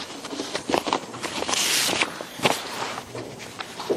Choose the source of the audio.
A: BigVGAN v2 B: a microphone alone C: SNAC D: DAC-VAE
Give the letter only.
A